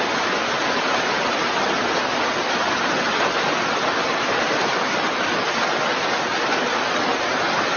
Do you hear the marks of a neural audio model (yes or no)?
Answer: no